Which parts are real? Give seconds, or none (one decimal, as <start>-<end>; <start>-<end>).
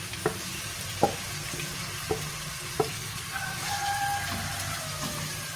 0.0-2.9; 3.4-5.6